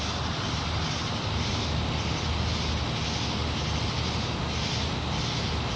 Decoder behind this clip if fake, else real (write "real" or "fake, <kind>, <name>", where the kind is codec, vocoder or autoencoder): real